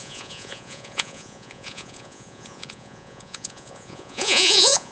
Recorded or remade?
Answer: remade